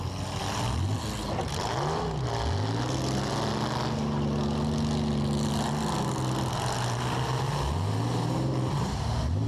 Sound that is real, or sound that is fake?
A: real